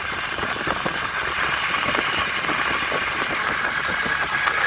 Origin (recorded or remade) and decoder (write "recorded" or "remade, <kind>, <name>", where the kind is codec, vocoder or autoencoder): recorded